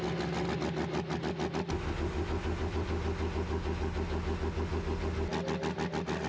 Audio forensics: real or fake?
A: real